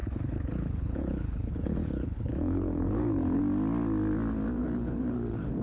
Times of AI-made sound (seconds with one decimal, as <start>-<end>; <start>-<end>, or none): 0.0-3.4; 4.6-5.6